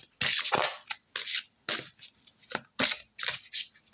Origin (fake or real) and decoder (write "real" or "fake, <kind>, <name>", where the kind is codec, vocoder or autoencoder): real